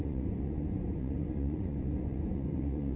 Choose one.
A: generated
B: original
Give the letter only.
A